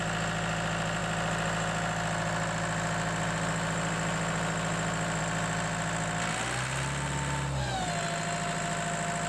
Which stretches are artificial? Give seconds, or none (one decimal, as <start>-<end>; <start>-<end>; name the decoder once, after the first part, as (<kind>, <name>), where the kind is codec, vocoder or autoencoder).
none

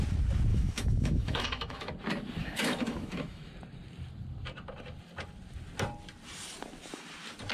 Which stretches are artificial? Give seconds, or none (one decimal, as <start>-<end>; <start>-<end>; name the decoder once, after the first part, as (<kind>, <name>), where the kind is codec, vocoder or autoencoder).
0.5-1.9 (autoencoder, DAC-VAE); 2.4-3.5

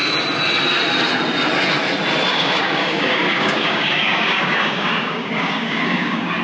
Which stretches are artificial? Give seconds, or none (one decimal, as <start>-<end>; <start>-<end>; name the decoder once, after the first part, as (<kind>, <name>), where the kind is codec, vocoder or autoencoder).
2.3-6.4 (codec, DAC)

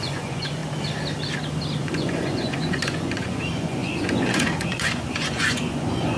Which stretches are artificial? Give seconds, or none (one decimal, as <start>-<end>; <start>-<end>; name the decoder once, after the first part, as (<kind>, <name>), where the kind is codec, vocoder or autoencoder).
0.0-0.6 (vocoder, Vocos); 1.8-6.2